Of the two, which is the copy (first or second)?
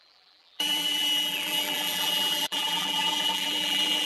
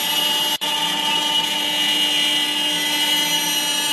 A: first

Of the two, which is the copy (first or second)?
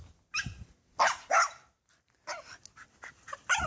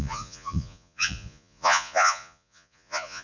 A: second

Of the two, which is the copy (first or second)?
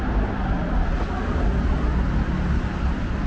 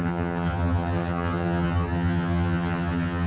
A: second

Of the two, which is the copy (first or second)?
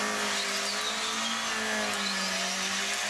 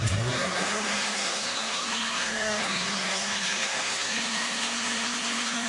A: second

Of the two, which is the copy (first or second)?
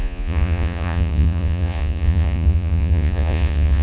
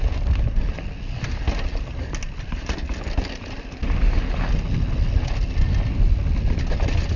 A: first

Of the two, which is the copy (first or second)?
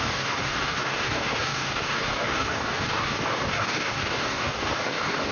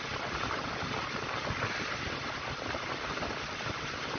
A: first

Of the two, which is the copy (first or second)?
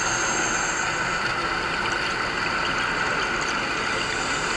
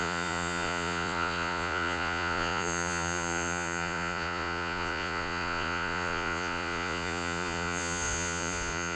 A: second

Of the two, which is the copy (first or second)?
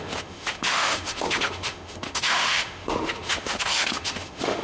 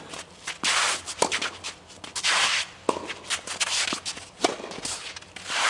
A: first